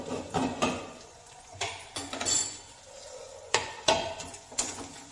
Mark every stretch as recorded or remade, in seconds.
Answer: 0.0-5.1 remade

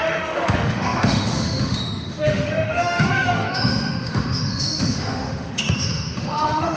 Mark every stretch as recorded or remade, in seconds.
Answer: 0.0-6.8 remade

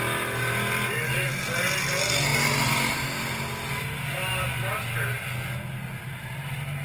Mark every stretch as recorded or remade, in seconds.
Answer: 0.0-2.3 recorded; 2.3-2.9 remade; 2.9-6.8 recorded

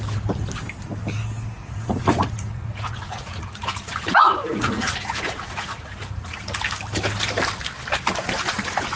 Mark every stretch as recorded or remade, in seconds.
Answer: 0.0-1.6 recorded; 1.6-6.4 remade; 6.4-9.0 recorded

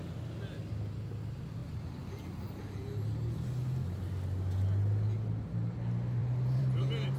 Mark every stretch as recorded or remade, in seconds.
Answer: 0.0-1.6 recorded; 1.6-2.6 remade; 2.6-6.2 recorded; 6.2-6.8 remade; 6.8-7.2 recorded